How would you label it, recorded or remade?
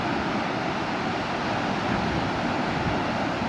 recorded